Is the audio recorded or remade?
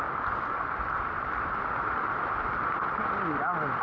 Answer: recorded